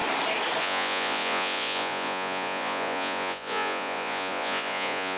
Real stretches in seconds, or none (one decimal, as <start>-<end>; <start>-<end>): 0.0-0.6